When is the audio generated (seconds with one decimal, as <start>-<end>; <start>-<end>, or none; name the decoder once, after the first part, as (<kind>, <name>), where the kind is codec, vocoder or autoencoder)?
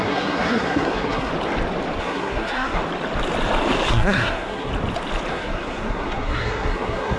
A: 0.0-1.3 (codec, SNAC); 2.0-2.8; 3.9-4.7; 5.3-7.2